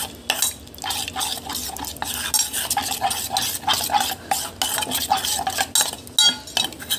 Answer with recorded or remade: recorded